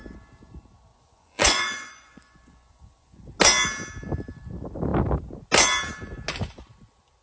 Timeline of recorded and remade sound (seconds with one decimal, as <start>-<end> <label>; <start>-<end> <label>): 0.0-0.9 recorded; 0.9-3.2 remade; 3.2-7.2 recorded